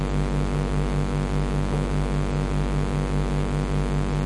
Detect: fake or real real